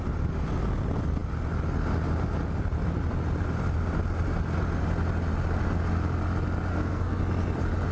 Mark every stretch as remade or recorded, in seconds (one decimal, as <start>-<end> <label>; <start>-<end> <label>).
0.0-6.7 recorded; 6.7-7.2 remade; 7.2-7.9 recorded